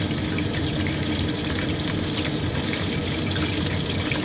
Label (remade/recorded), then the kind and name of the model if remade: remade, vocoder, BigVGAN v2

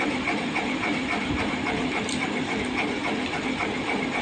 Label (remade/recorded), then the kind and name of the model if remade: remade, vocoder, BigVGAN v2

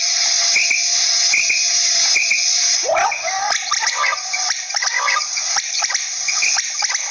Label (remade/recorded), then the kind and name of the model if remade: recorded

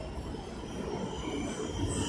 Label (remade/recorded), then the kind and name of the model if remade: recorded